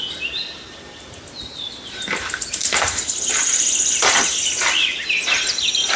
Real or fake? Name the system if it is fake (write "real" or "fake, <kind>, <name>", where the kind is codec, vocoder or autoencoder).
real